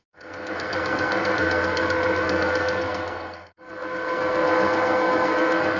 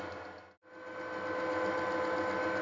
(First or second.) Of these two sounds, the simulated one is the first